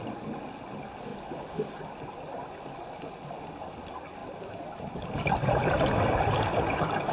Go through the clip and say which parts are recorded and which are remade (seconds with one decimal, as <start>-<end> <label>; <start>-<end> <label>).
0.0-7.1 recorded